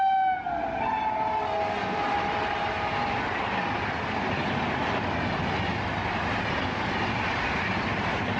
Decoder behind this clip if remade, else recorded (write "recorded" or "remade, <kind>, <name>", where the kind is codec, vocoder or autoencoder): recorded